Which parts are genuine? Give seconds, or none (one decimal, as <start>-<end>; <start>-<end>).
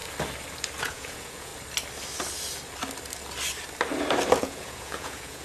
0.0-0.8; 1.5-4.4